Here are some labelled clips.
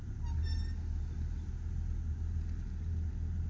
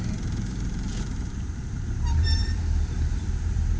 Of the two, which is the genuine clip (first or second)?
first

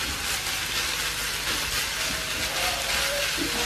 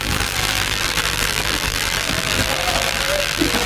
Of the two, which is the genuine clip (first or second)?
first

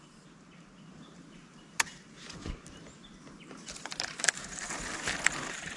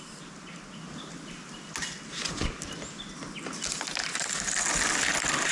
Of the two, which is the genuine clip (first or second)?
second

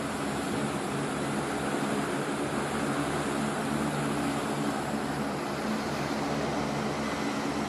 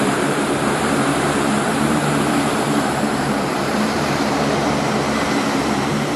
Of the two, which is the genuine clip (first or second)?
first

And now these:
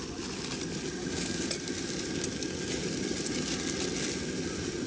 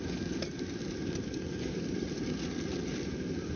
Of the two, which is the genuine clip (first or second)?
first